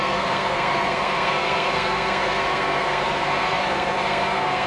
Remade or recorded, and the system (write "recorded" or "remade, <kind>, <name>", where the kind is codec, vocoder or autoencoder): remade, codec, SNAC